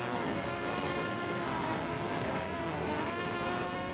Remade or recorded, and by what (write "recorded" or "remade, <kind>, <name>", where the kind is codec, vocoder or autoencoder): remade, codec, SNAC